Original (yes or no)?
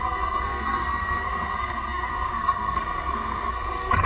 no